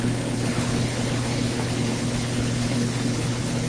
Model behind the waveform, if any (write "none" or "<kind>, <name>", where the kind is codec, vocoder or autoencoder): codec, HILCodec